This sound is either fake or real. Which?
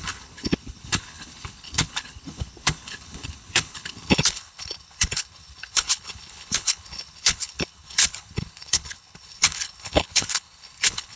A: fake